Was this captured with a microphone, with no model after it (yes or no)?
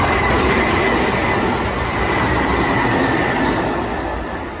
yes